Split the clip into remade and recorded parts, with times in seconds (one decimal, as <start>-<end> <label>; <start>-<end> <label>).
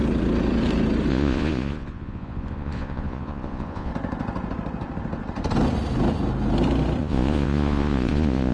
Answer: 0.0-1.1 recorded; 1.1-3.9 remade; 3.9-7.0 recorded; 7.0-8.5 remade